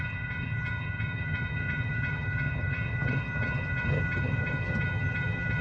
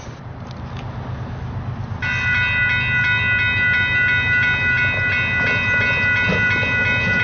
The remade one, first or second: first